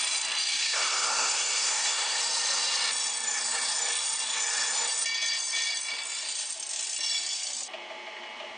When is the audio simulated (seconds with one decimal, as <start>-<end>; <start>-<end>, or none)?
0.6-2.2

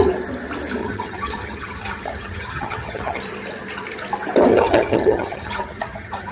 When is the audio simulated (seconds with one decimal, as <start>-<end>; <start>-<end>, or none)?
0.8-3.2; 4.5-6.3